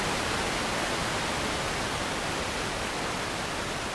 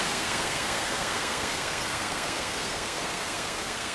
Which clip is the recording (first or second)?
first